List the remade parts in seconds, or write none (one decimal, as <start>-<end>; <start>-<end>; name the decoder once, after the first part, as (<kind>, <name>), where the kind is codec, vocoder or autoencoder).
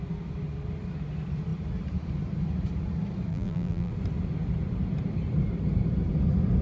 3.3-3.9 (vocoder, BigVGAN v2)